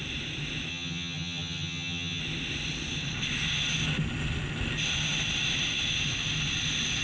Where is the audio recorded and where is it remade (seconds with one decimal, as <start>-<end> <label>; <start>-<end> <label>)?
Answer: 0.0-0.7 recorded; 0.7-2.2 remade; 2.2-7.0 recorded